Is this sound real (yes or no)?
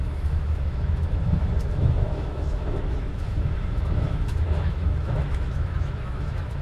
no